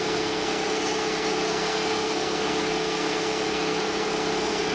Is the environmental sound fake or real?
fake